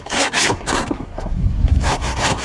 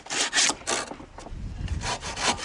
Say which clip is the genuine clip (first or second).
second